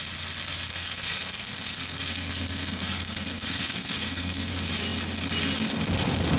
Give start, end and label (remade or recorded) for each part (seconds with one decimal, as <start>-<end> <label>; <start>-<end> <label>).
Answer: 0.0-0.7 recorded; 0.7-4.5 remade; 4.5-6.4 recorded